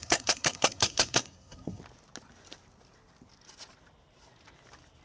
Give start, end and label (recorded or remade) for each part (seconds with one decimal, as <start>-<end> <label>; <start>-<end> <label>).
0.0-1.8 remade; 1.8-5.0 recorded